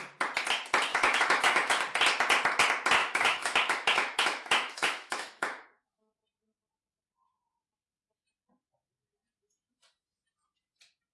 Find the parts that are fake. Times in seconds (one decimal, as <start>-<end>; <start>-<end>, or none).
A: 0.9-1.7; 3.0-6.1